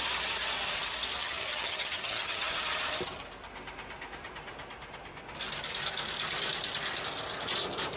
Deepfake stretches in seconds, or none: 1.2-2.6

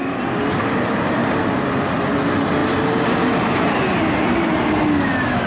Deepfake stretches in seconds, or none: none

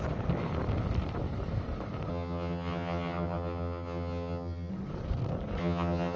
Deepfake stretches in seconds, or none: 2.1-4.7; 5.6-6.2

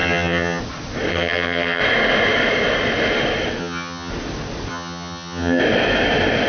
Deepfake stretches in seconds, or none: 0.0-0.6; 1.1-1.8; 3.6-4.1; 4.7-5.6

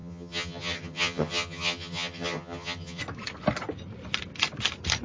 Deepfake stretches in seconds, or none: 0.0-3.0